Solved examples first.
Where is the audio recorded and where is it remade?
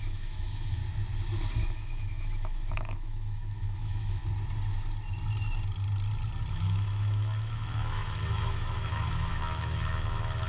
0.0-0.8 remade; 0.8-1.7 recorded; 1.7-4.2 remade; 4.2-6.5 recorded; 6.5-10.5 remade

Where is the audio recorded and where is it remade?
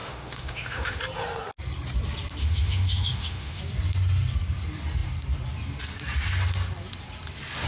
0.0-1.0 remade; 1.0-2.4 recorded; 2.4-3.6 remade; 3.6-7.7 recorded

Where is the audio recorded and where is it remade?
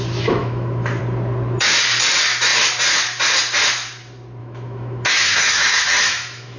0.0-0.4 recorded; 0.4-1.0 remade; 1.0-4.4 recorded; 4.4-6.6 remade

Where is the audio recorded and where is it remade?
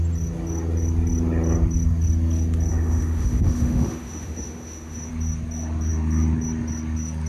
0.0-2.7 recorded; 2.7-5.1 remade; 5.1-7.3 recorded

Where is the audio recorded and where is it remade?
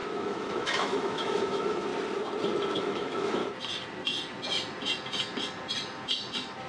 0.0-1.9 remade; 1.9-2.8 recorded; 2.8-3.4 remade; 3.4-6.7 recorded